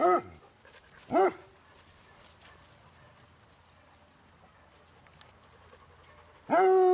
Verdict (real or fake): real